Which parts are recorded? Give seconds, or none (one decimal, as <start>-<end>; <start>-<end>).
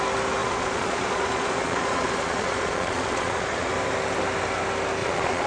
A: 0.0-0.4; 3.7-5.0